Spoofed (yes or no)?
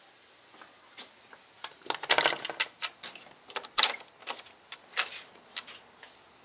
no